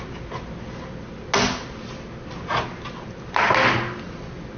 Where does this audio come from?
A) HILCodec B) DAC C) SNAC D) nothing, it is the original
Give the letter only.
D